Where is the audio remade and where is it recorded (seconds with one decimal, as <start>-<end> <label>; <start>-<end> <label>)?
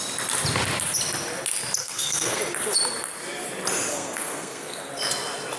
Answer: 0.0-1.8 recorded; 1.8-2.4 remade; 2.4-3.9 recorded; 3.9-4.9 remade; 4.9-5.6 recorded